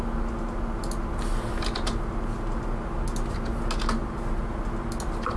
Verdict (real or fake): real